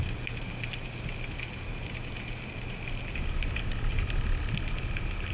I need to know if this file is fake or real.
real